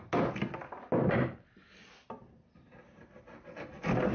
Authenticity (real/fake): real